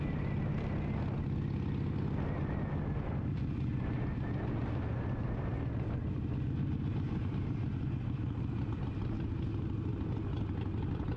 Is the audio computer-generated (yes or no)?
no